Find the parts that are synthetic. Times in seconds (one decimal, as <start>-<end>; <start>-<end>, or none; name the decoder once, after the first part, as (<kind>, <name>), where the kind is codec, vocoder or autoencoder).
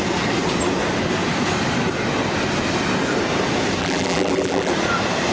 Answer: 3.8-4.7 (vocoder, BigVGAN v2)